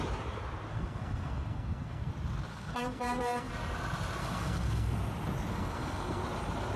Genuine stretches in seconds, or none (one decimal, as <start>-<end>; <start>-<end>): 0.0-0.7; 2.1-2.5; 3.5-4.2; 5.0-5.5; 6.2-6.8